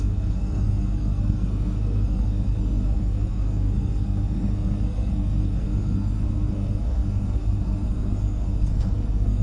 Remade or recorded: remade